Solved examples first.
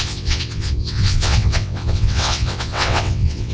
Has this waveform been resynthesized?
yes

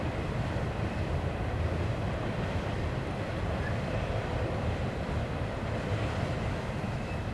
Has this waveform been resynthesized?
no